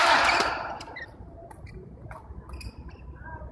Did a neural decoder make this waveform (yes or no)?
no